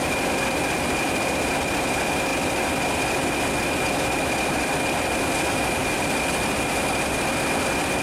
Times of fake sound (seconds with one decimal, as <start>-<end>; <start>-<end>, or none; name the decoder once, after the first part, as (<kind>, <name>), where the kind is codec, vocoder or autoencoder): none